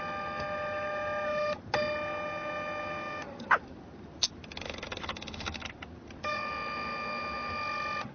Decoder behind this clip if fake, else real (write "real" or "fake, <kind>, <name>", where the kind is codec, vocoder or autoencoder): real